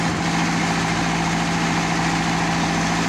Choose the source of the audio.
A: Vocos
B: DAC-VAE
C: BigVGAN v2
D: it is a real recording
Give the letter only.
D